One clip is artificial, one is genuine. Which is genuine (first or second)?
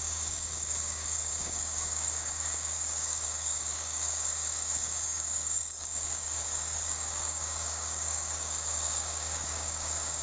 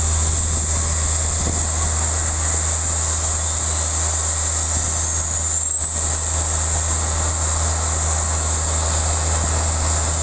second